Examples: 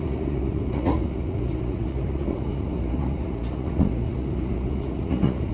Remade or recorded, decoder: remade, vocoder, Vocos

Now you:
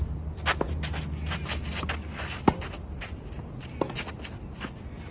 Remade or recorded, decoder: recorded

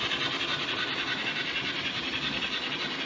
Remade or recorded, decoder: recorded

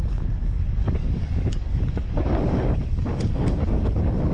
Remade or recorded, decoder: remade, codec, DAC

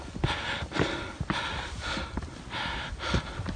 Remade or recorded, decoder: recorded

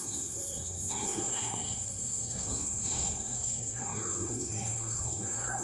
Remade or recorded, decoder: remade, codec, SNAC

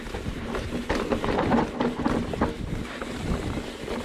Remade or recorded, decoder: recorded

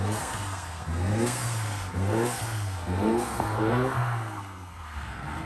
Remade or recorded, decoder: remade, codec, SNAC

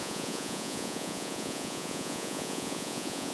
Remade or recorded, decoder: remade, vocoder, Vocos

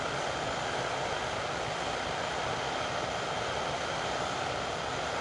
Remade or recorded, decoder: recorded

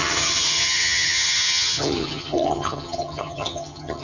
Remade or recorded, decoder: remade, vocoder, HiFi-GAN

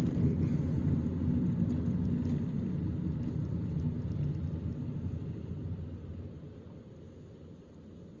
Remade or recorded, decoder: recorded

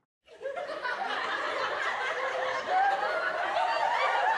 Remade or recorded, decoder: recorded